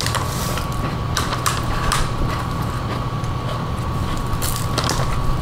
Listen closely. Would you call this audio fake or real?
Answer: fake